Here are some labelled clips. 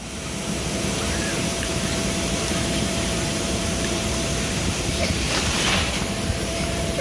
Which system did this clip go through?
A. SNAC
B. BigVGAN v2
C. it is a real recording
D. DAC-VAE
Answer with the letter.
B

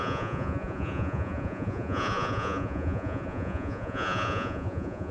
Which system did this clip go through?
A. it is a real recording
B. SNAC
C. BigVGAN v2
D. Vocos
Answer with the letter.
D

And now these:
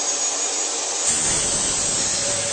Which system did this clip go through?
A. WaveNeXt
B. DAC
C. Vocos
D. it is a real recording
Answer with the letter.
D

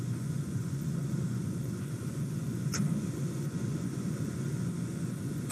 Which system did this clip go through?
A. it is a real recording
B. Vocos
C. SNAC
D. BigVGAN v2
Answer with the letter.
B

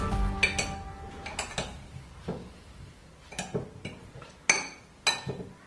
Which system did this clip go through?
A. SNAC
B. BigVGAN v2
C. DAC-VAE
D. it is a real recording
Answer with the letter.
D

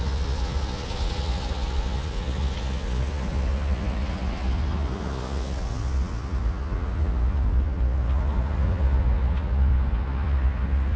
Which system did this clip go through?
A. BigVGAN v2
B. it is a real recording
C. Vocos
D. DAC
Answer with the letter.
C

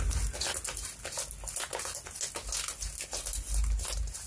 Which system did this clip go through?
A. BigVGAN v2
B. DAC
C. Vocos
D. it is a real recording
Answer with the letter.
D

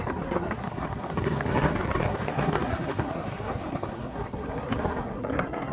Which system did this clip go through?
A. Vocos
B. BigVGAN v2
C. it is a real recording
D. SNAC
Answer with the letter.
D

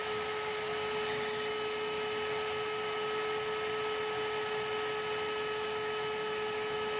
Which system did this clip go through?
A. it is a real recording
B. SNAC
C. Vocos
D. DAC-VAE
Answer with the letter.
A